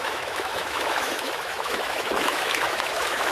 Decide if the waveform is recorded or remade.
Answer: remade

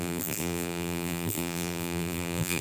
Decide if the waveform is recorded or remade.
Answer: remade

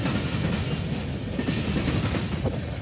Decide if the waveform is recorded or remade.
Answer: recorded